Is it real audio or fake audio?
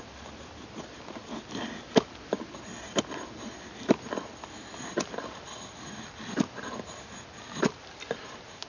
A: real